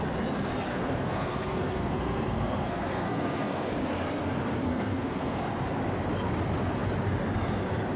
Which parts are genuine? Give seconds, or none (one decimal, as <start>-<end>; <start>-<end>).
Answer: 0.0-0.7; 3.7-4.7; 5.4-8.0